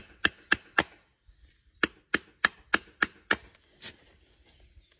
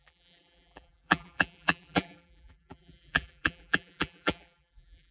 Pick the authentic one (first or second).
first